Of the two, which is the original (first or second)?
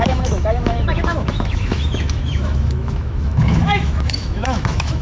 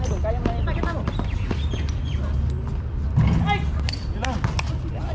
second